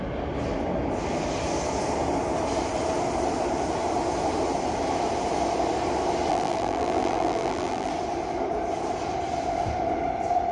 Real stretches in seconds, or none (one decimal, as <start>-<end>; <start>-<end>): 0.0-6.3; 7.9-10.5